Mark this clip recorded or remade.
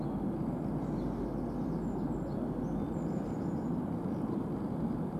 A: recorded